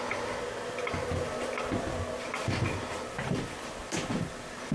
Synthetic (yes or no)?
no